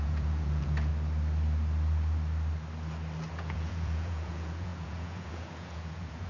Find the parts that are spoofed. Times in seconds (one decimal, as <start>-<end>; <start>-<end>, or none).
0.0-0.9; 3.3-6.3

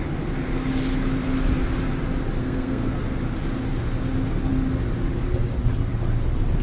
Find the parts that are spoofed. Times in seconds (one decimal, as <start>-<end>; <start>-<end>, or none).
2.4-3.0

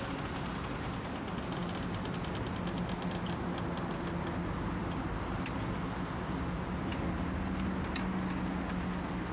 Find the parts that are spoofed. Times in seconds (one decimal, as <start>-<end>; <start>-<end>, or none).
none

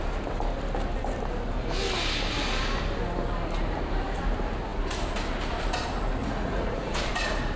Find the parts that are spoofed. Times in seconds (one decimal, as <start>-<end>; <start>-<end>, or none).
6.2-7.1

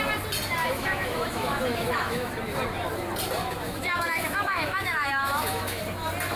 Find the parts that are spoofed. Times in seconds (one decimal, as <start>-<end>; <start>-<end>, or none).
0.6-2.3; 3.4-5.8

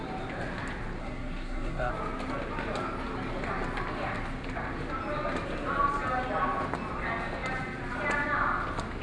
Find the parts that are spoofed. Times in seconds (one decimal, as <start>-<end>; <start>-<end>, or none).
1.0-1.9

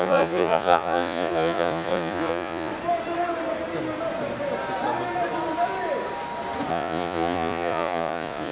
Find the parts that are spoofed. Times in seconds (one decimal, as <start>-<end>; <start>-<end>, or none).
0.0-2.7; 6.7-8.5